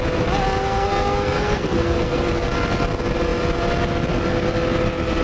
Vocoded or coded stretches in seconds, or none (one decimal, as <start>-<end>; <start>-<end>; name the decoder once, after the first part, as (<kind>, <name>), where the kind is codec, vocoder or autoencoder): 0.6-2.2 (codec, SNAC)